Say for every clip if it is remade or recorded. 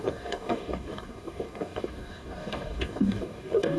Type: remade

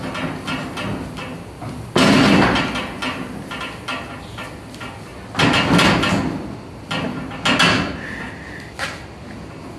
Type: recorded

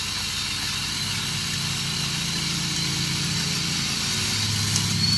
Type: recorded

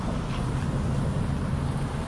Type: recorded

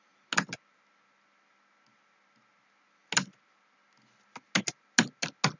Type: recorded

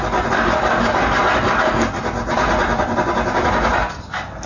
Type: recorded